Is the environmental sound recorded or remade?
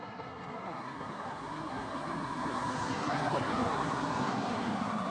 remade